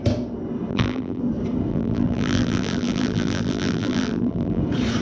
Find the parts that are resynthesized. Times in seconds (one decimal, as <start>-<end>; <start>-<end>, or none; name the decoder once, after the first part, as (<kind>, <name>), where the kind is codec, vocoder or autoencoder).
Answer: 0.7-1.2 (vocoder, BigVGAN v2); 1.7-4.6